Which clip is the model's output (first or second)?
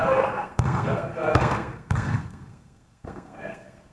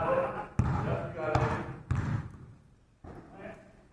first